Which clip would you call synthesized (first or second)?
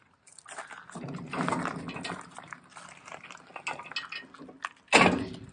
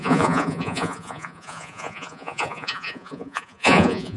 second